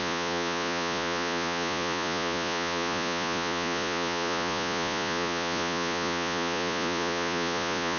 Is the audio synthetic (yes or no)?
yes